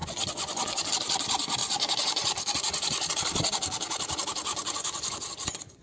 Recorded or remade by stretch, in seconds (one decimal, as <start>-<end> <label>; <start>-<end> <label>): 0.0-0.9 remade; 0.9-1.6 recorded; 1.6-3.1 remade; 3.1-4.5 recorded; 4.5-5.8 remade

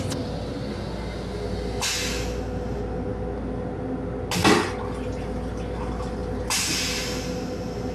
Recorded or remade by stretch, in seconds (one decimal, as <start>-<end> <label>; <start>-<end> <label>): 0.0-7.9 recorded

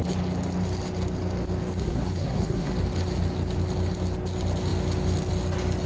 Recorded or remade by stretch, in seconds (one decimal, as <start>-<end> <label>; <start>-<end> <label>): 0.0-1.8 recorded; 1.8-2.7 remade; 2.7-5.9 recorded

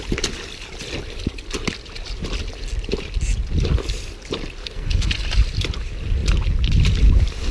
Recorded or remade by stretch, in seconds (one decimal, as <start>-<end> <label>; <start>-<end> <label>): 0.0-4.6 recorded; 4.6-5.1 remade; 5.1-7.5 recorded